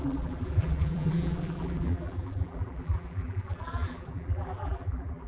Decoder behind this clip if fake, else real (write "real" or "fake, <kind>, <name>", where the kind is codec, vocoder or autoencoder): fake, vocoder, BigVGAN v2